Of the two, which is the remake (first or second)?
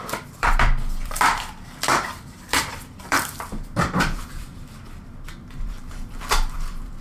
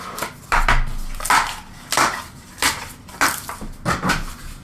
first